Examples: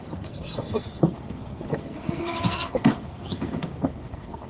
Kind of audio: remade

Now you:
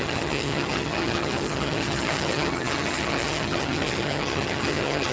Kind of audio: remade